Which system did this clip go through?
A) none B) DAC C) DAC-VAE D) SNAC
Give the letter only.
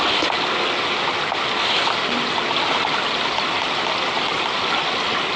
A